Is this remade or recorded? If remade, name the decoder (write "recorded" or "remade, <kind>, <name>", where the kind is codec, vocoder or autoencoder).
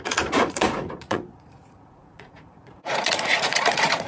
remade, vocoder, Vocos